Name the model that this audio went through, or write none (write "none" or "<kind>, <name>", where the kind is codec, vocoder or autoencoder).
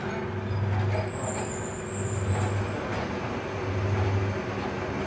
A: none